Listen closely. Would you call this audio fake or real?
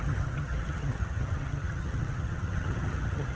fake